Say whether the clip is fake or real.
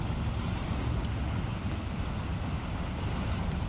real